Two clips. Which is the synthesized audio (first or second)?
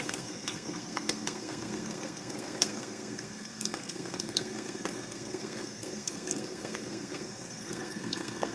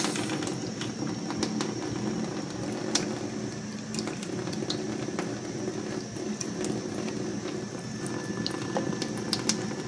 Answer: first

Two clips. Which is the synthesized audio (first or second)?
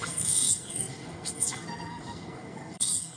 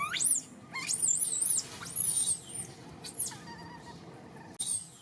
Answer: first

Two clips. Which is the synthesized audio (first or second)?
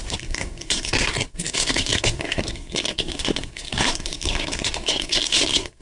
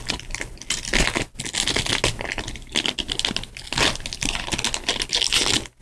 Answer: first